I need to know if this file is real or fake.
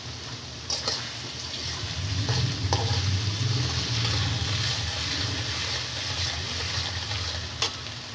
real